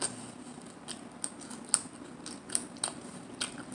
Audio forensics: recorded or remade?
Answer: recorded